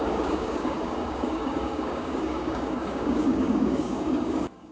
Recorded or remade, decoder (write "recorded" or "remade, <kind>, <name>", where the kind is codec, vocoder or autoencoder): remade, codec, DAC